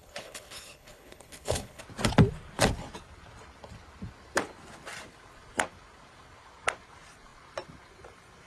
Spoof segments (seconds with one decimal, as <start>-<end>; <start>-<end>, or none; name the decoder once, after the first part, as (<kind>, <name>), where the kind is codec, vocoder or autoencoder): 0.0-1.8 (codec, HILCodec)